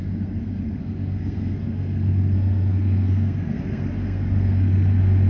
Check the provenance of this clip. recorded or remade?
remade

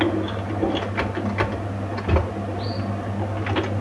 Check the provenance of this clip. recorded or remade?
recorded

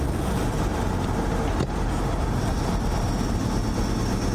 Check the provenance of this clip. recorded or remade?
recorded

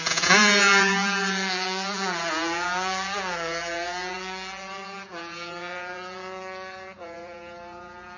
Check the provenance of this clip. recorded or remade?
remade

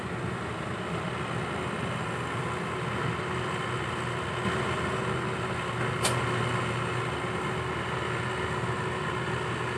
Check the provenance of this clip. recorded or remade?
recorded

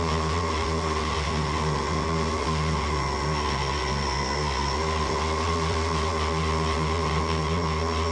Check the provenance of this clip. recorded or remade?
remade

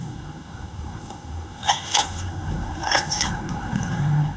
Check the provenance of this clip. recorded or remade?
remade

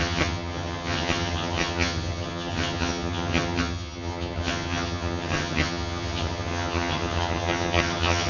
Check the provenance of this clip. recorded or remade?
remade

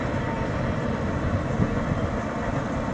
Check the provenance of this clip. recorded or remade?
recorded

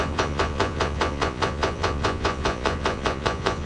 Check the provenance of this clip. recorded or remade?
remade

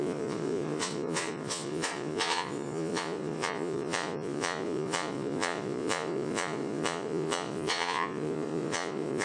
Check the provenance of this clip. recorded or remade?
remade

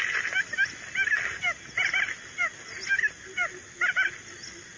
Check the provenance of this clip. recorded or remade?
recorded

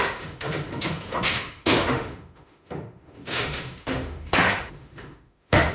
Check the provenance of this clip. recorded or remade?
remade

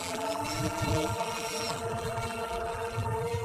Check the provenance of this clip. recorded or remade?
remade